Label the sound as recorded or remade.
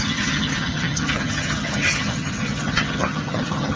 remade